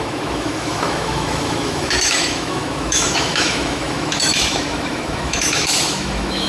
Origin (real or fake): fake